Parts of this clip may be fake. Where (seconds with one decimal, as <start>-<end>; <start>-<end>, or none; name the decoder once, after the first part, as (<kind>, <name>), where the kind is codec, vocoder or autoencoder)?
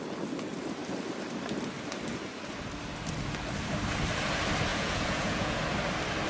4.7-5.6 (vocoder, Vocos)